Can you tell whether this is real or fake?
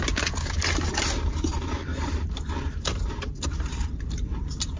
fake